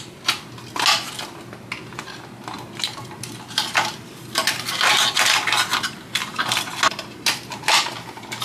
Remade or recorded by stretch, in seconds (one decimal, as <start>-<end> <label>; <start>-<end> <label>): 0.0-8.4 recorded